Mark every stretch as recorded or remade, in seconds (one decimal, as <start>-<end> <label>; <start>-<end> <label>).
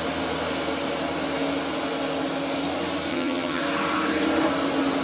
0.0-3.1 recorded; 3.1-3.6 remade; 3.6-5.0 recorded